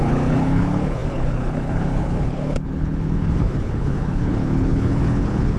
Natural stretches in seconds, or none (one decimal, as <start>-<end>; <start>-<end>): none